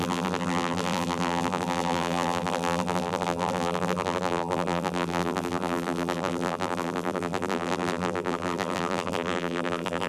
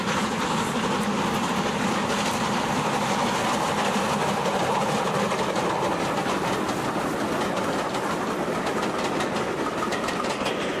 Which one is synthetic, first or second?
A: first